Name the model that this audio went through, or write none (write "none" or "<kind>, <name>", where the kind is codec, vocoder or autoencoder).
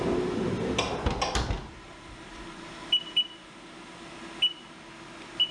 none